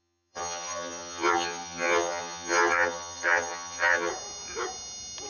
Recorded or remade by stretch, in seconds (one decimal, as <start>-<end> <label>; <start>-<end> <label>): 0.0-4.1 remade; 4.1-5.3 recorded